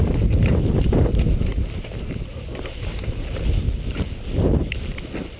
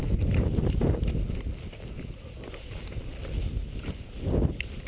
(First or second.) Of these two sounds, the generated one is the first